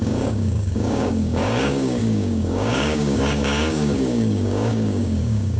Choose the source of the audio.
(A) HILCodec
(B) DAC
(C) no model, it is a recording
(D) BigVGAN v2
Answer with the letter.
B